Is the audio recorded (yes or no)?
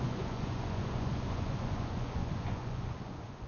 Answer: no